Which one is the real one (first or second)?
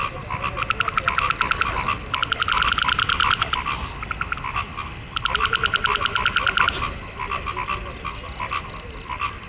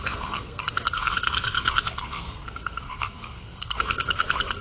first